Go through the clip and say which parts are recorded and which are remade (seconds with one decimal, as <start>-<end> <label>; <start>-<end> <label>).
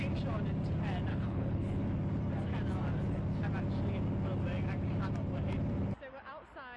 0.0-1.1 recorded; 1.1-1.8 remade; 1.8-6.8 recorded